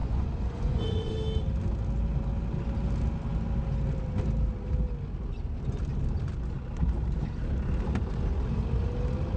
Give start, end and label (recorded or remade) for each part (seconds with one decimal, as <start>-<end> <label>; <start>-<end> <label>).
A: 0.0-1.1 remade; 1.1-9.4 recorded